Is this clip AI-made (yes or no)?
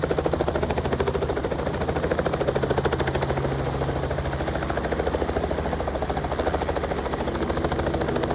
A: no